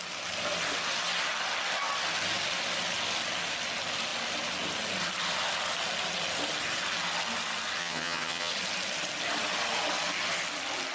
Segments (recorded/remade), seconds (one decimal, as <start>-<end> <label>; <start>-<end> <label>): 0.0-7.8 recorded; 7.8-8.5 remade; 8.5-10.9 recorded